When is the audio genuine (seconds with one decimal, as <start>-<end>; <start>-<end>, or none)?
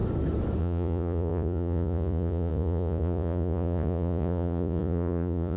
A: 0.0-0.6